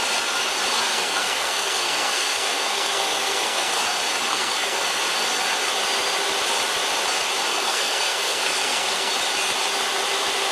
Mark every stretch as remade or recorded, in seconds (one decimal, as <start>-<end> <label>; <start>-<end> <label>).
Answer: 0.0-0.9 recorded; 0.9-3.8 remade; 3.8-4.3 recorded; 4.3-5.0 remade; 5.0-7.5 recorded; 7.5-9.1 remade; 9.1-10.5 recorded

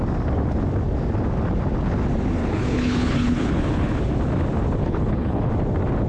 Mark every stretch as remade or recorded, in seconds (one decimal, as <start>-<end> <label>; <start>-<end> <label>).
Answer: 0.0-2.4 recorded; 2.4-4.0 remade; 4.0-4.8 recorded; 4.8-5.5 remade; 5.5-6.1 recorded

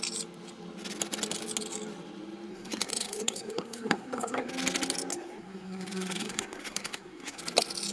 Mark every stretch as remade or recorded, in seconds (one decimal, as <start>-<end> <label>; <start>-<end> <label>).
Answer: 0.0-2.5 recorded; 2.5-4.5 remade; 4.5-5.1 recorded; 5.1-7.4 remade; 7.4-7.9 recorded

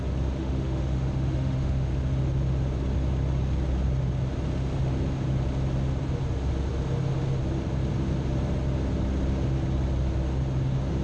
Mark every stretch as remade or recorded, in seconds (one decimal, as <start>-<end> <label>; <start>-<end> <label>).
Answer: 0.0-0.4 recorded; 0.4-1.9 remade; 1.9-11.0 recorded